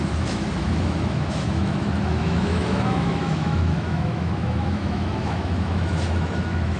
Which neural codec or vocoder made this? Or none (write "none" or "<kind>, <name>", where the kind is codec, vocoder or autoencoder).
autoencoder, DAC-VAE